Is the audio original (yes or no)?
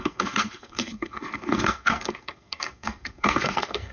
no